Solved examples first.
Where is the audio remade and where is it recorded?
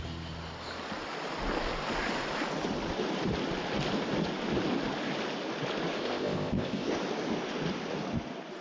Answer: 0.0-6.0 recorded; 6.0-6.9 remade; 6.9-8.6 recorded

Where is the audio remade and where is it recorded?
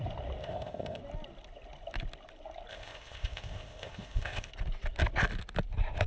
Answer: 0.0-0.4 recorded; 0.4-1.0 remade; 1.0-2.7 recorded; 2.7-4.5 remade; 4.5-6.1 recorded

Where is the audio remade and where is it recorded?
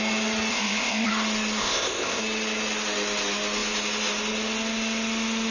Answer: 0.0-0.5 recorded; 0.5-1.1 remade; 1.1-1.6 recorded; 1.6-2.2 remade; 2.2-5.5 recorded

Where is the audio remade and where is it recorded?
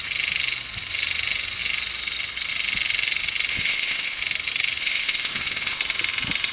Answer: 0.0-3.5 recorded; 3.5-4.2 remade; 4.2-4.8 recorded; 4.8-5.8 remade; 5.8-6.5 recorded